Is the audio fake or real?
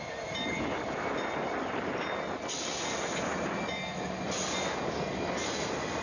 real